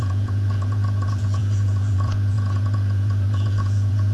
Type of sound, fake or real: fake